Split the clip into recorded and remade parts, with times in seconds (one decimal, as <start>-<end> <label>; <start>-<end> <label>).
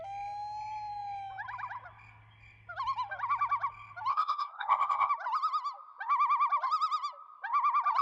0.0-4.1 recorded; 4.1-5.1 remade; 5.1-8.0 recorded